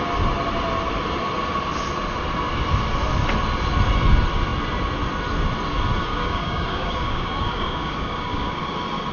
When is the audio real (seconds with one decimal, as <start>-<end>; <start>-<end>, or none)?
0.0-6.1; 8.6-9.1